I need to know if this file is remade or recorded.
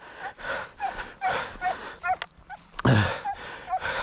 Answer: recorded